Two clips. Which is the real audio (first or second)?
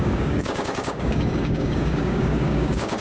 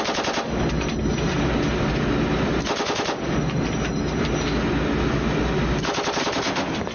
second